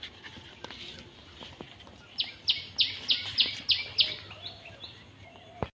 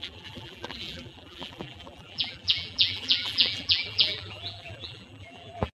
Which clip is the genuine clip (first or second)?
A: first